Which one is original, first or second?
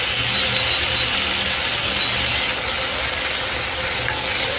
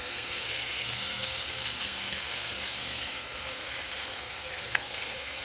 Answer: first